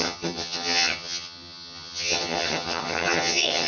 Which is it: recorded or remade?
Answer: remade